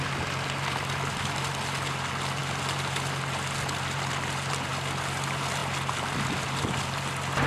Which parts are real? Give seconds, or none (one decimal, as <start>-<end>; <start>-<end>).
0.0-7.5